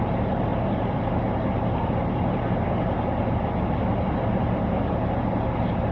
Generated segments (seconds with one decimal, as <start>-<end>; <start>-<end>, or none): none